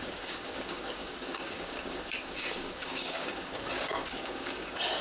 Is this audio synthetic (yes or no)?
yes